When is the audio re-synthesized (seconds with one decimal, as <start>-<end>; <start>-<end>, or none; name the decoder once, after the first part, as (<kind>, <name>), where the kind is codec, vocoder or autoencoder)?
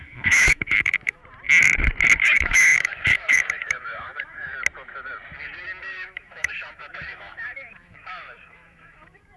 0.0-1.2 (autoencoder, DAC-VAE); 2.2-4.5; 5.8-9.4